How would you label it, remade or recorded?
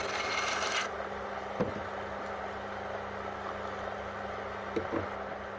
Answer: recorded